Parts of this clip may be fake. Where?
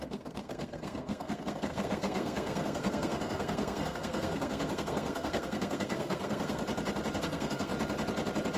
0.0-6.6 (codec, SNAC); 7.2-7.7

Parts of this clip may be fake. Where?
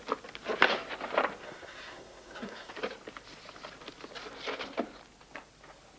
1.4-2.7 (codec, SNAC)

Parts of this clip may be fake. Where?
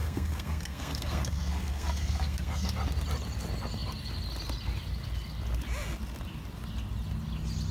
0.0-2.7 (codec, SNAC)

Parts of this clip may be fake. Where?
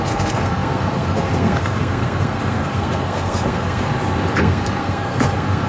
0.0-3.9 (codec, SNAC); 4.4-5.7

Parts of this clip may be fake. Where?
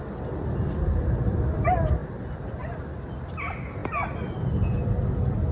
none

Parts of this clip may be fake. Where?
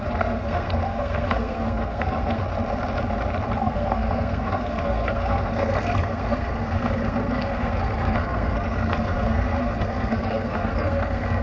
0.0-2.4 (codec, SNAC); 3.6-11.4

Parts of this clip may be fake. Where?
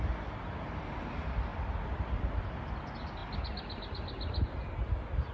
none